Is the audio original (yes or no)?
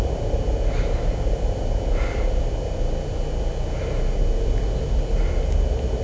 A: yes